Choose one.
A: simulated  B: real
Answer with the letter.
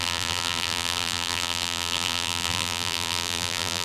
A